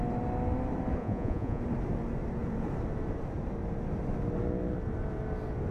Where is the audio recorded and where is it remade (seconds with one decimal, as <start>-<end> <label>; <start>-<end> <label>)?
0.0-1.0 recorded; 1.0-1.6 remade; 1.6-5.7 recorded